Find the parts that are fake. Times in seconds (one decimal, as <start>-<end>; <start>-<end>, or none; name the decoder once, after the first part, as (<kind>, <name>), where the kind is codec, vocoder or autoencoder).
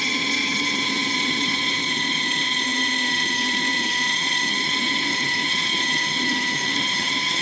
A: 0.0-7.4 (vocoder, HiFi-GAN)